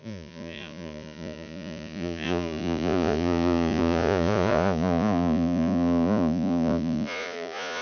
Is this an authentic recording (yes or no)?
no